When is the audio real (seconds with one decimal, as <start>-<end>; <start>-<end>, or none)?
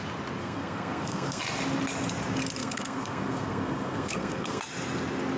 0.0-0.4; 1.4-2.6; 4.6-5.4